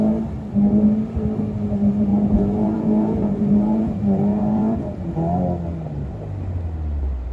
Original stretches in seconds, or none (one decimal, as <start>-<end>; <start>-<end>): 0.0-2.1; 3.9-4.3; 5.1-7.3